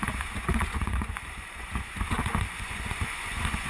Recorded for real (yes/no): no